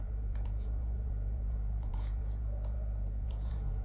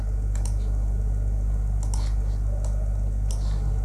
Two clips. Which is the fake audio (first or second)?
first